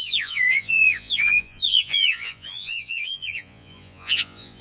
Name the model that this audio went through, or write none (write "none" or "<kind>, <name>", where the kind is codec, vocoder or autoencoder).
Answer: vocoder, Vocos